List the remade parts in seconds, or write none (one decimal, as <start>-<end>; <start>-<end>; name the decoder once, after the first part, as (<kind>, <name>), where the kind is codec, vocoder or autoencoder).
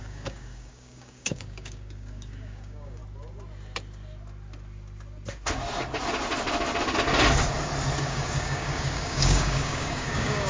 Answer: 0.0-3.0 (codec, DAC); 8.0-10.5